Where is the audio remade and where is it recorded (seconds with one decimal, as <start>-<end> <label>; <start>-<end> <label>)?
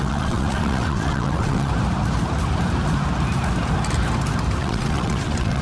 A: 0.0-1.7 remade; 1.7-4.6 recorded; 4.6-5.6 remade